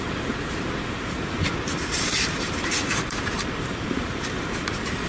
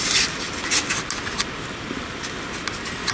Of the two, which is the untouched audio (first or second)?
second